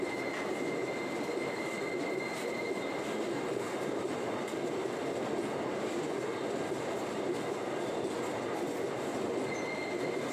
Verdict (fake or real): real